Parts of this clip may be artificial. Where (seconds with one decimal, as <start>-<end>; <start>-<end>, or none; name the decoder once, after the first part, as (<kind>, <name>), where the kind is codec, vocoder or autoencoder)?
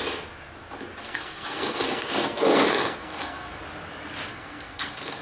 1.0-3.6 (codec, SNAC); 4.3-5.2